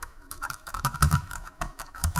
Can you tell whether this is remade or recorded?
remade